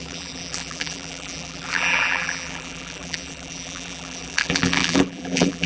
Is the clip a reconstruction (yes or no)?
yes